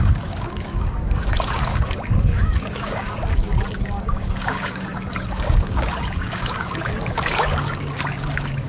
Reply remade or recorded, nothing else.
remade